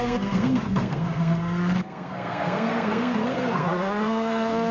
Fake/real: fake